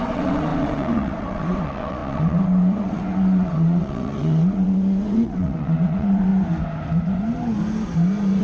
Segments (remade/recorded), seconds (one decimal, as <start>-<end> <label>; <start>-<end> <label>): 0.0-6.3 remade; 6.3-8.4 recorded